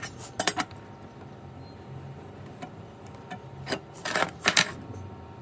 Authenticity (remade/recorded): recorded